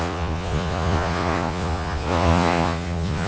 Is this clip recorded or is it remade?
remade